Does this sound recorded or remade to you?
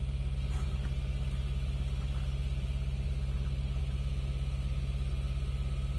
recorded